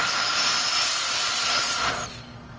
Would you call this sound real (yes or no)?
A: yes